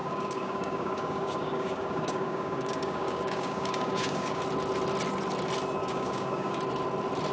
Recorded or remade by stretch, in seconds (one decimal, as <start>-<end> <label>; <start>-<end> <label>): 0.0-4.4 remade; 4.4-5.8 recorded; 5.8-6.6 remade; 6.6-7.3 recorded

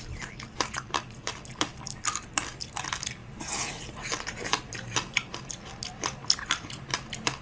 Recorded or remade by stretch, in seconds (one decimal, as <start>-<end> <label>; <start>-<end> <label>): 0.0-7.4 recorded

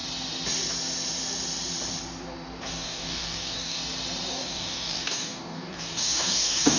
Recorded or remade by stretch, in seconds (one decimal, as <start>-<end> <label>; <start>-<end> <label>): 0.0-2.6 recorded; 2.6-3.8 remade; 3.8-4.3 recorded; 4.3-6.8 remade

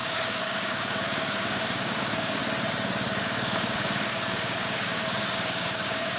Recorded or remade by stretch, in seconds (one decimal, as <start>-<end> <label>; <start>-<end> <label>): 0.0-2.4 remade; 2.4-3.2 recorded; 3.2-6.2 remade

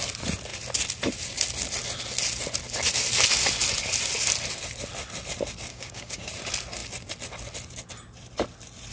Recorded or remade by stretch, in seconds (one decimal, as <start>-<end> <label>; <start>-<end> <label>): 0.0-5.7 recorded; 5.7-6.3 remade; 6.3-8.9 recorded

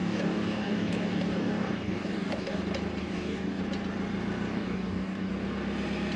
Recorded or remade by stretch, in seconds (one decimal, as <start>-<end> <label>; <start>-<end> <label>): 0.0-2.6 remade; 2.6-3.0 recorded; 3.0-3.6 remade; 3.6-4.5 recorded; 4.5-5.3 remade; 5.3-6.2 recorded